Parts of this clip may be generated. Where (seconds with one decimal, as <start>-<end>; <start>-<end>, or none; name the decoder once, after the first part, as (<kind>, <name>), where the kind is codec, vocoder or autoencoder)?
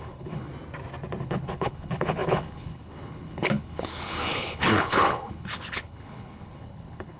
0.0-0.5 (codec, HILCodec); 1.2-7.2